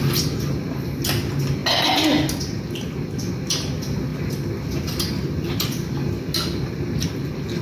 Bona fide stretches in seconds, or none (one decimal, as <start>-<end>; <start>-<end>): 0.0-7.6